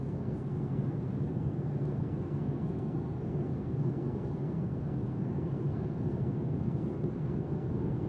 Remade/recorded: remade